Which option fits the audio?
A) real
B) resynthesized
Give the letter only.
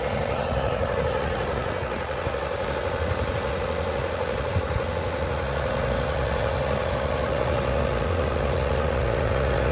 B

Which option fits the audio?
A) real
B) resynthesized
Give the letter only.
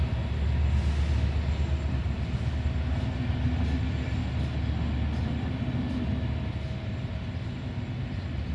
A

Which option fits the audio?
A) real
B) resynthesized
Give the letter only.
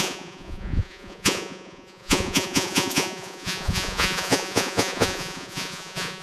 B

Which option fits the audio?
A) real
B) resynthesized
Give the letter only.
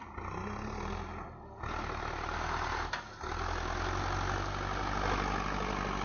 A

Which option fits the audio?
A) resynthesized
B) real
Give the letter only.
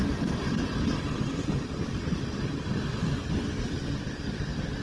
B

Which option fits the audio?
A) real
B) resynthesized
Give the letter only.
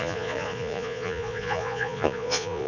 B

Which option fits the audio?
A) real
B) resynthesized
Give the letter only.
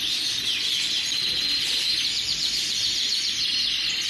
A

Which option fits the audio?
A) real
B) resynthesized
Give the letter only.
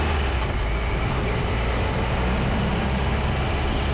A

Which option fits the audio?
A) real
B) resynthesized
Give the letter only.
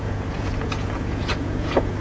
B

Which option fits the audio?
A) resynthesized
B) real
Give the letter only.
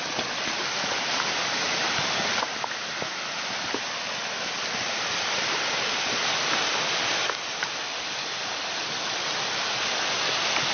B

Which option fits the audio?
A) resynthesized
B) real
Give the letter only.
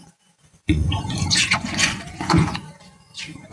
A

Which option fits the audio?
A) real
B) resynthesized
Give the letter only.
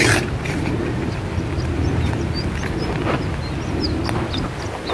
A